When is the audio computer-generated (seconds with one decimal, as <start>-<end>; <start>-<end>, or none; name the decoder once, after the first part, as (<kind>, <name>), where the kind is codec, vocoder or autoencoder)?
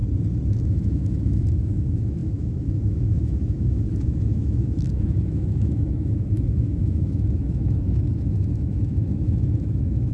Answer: 0.7-10.1 (autoencoder, DAC-VAE)